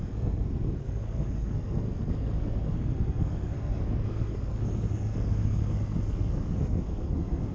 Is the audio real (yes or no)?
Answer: no